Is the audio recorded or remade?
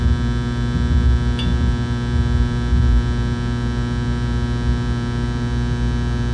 recorded